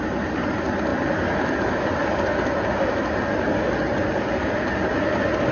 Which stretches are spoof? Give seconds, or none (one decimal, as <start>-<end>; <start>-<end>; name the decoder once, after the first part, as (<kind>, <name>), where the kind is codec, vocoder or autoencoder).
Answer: none